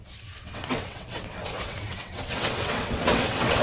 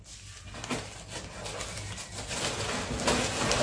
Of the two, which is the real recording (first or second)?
second